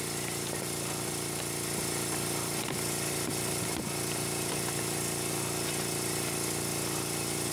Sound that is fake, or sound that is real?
real